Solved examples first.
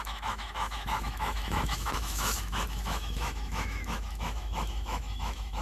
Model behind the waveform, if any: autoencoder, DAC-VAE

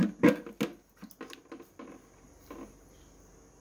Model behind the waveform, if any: none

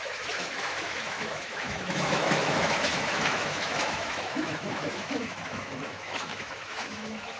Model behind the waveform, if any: autoencoder, DAC-VAE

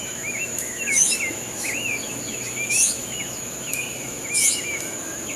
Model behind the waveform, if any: autoencoder, DAC-VAE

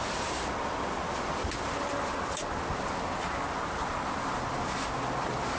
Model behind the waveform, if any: none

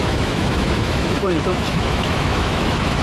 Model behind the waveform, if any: autoencoder, DAC-VAE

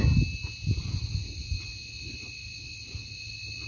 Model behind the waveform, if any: none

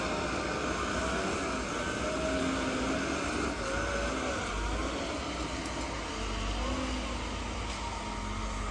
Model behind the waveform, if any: none